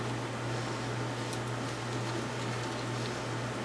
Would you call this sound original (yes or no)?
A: yes